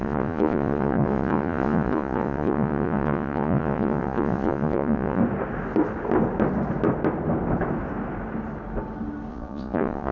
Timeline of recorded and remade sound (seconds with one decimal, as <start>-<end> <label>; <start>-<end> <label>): 0.0-5.2 remade; 5.2-9.3 recorded; 9.3-10.1 remade